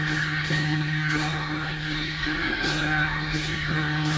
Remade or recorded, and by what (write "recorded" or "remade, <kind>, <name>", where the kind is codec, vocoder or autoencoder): remade, codec, SNAC